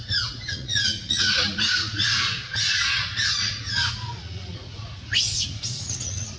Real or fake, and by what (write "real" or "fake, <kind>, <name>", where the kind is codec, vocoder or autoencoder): fake, vocoder, Vocos